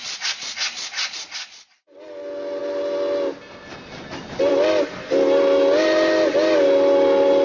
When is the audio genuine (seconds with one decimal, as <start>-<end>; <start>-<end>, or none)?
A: 0.0-7.4